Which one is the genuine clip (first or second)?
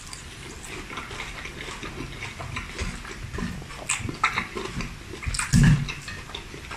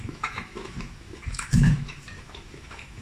first